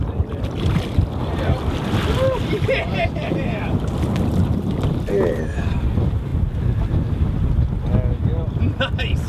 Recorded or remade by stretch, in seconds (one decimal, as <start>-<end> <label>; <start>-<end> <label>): 0.0-8.2 recorded; 8.2-8.8 remade; 8.8-9.3 recorded